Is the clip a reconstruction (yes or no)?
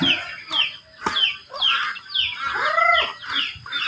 no